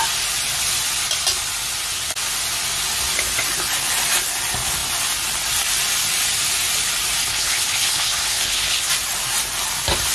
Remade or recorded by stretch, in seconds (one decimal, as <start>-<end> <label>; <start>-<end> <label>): 0.0-7.2 recorded; 7.2-8.9 remade; 8.9-10.1 recorded